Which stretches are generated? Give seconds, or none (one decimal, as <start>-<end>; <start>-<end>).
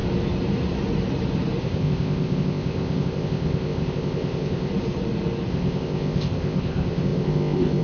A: 1.6-4.7; 5.5-7.8